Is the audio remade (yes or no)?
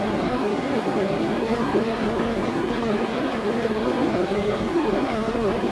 yes